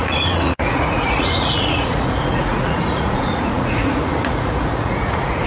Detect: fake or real fake